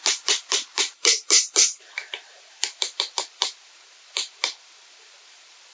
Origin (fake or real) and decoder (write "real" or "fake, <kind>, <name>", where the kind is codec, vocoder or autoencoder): fake, vocoder, BigVGAN v2